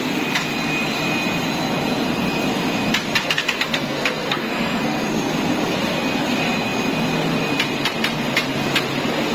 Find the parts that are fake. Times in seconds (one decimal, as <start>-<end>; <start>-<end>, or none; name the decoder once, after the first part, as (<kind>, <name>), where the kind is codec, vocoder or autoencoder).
3.2-5.3 (codec, SNAC)